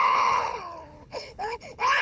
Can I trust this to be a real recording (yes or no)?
no